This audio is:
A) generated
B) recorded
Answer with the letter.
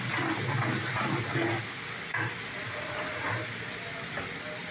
B